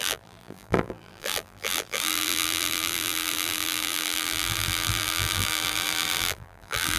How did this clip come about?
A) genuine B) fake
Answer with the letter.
B